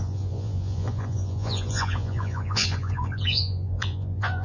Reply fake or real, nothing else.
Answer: fake